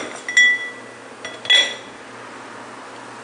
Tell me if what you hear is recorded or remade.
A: recorded